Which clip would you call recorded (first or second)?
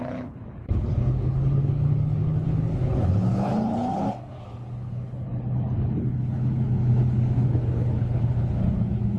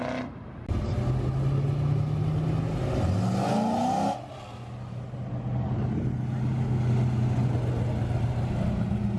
second